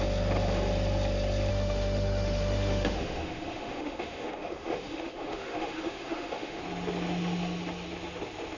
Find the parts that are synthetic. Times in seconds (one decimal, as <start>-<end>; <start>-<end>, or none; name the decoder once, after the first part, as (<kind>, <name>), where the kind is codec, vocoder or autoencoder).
1.5-6.6 (autoencoder, DAC-VAE)